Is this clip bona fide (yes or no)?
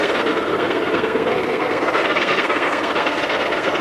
no